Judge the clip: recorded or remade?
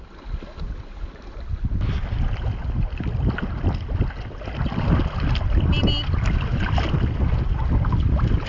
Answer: recorded